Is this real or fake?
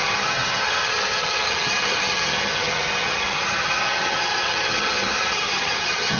fake